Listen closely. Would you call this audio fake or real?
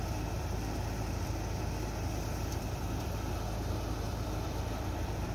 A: fake